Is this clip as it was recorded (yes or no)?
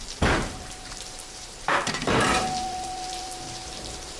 no